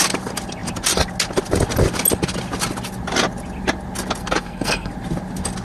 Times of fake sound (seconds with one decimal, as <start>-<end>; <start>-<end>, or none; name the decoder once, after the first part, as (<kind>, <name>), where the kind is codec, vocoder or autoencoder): 4.2-4.9 (codec, SNAC)